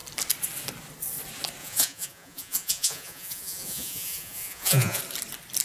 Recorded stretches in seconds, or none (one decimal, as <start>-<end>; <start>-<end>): 0.0-1.6; 5.0-5.6